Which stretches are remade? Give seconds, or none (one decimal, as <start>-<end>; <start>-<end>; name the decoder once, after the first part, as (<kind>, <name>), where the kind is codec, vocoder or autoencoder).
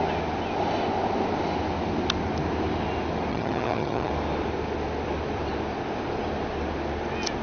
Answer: 3.3-4.1 (vocoder, HiFi-GAN)